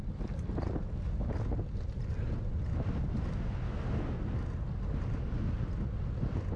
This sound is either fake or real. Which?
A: real